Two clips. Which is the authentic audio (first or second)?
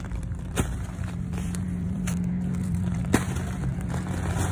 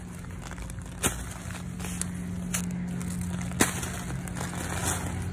second